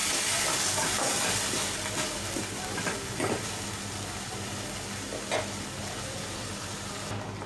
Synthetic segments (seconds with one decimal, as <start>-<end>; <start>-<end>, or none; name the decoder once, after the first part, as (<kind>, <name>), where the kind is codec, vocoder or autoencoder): none